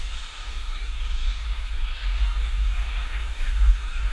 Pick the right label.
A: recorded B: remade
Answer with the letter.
B